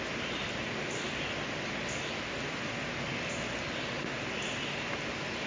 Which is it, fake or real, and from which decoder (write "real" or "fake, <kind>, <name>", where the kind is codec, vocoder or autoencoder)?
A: real